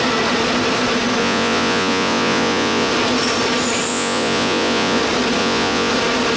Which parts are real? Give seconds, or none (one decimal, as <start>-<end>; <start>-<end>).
0.0-1.2; 2.9-3.9; 5.0-5.4; 5.9-6.4